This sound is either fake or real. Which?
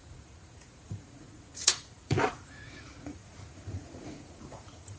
fake